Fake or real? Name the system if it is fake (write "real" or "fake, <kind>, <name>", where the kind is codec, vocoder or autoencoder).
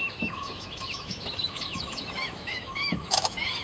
fake, autoencoder, DAC-VAE